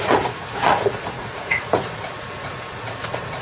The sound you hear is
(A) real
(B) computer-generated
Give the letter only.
B